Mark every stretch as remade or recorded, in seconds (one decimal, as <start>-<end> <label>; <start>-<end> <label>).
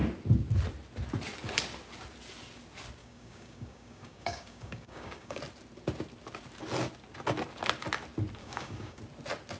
0.0-3.0 recorded; 3.0-5.4 remade; 5.4-8.4 recorded; 8.4-9.0 remade; 9.0-9.6 recorded